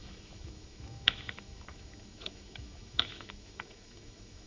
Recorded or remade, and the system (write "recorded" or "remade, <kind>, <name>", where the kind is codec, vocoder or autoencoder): remade, autoencoder, DAC-VAE